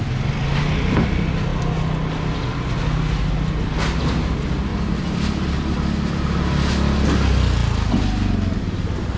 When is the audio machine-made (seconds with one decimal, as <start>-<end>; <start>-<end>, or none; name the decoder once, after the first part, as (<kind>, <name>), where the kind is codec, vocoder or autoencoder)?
4.7-6.4 (vocoder, BigVGAN v2)